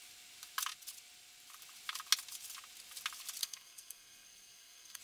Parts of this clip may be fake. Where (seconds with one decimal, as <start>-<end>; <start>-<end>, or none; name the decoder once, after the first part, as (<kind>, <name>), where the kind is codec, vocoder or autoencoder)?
3.4-5.0 (codec, SNAC)